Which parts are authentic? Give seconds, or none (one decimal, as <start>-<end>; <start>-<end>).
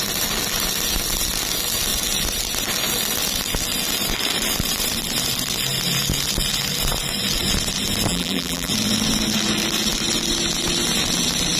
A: 0.0-8.1; 8.7-11.6